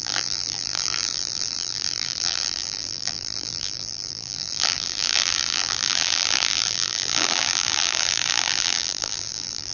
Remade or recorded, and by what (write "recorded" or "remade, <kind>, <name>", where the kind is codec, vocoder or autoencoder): remade, vocoder, BigVGAN v2